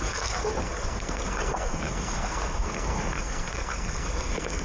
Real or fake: fake